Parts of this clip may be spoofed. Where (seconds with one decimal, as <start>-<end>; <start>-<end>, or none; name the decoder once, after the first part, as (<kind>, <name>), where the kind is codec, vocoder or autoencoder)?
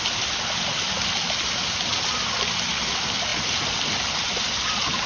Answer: none